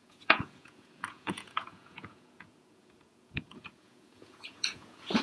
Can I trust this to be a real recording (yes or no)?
no